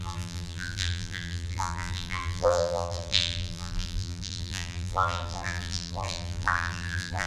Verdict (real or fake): fake